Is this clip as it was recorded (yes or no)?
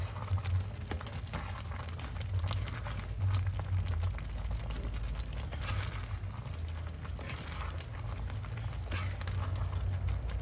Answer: yes